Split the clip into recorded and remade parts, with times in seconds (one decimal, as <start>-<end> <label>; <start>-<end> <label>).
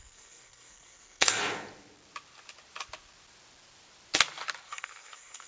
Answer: 0.0-1.4 remade; 1.4-4.7 recorded; 4.7-5.5 remade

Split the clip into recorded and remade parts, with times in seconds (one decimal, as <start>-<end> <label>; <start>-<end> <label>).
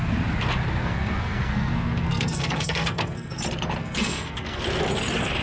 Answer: 0.0-0.8 recorded; 0.8-3.4 remade; 3.4-3.8 recorded; 3.8-4.6 remade; 4.6-5.4 recorded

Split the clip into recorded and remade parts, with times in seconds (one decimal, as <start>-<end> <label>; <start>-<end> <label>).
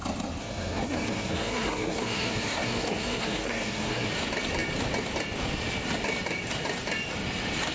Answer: 0.0-0.4 recorded; 0.4-4.1 remade; 4.1-7.7 recorded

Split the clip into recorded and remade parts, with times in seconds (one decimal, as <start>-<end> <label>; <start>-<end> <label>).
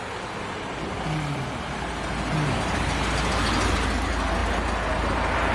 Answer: 0.0-5.5 recorded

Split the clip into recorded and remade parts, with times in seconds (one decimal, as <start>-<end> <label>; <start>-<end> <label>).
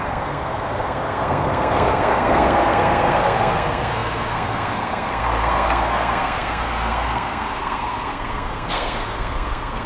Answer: 0.0-9.9 remade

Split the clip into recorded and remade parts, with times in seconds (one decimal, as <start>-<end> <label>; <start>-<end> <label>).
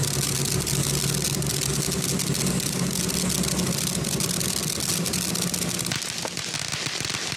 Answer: 0.0-7.4 recorded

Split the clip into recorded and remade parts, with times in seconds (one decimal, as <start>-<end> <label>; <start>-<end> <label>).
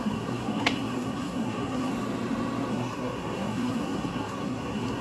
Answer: 0.0-1.9 remade; 1.9-2.7 recorded; 2.7-5.0 remade